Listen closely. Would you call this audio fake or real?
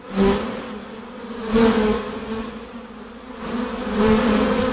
real